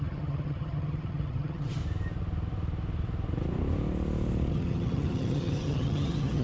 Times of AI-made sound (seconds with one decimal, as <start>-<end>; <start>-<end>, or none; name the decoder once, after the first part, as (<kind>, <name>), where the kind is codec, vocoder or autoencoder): 0.0-1.8 (vocoder, HiFi-GAN); 4.5-6.4